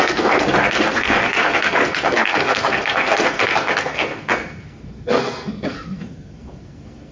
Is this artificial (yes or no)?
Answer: yes